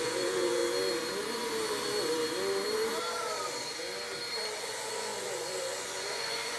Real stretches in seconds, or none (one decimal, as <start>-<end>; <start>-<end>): 0.6-4.6